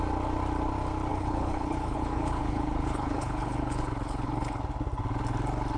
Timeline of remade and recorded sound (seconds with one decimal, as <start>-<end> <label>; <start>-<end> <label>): 0.0-1.1 recorded; 1.1-4.6 remade; 4.6-5.8 recorded